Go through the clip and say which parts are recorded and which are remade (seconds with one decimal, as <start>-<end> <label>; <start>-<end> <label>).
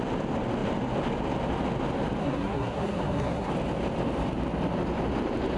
0.0-2.2 recorded; 2.2-3.5 remade; 3.5-5.6 recorded